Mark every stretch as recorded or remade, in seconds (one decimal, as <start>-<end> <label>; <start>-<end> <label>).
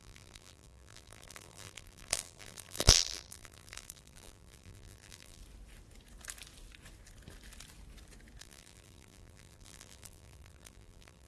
0.0-5.4 remade; 5.4-8.4 recorded; 8.4-11.3 remade